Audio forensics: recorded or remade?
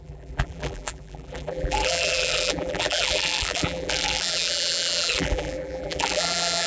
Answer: remade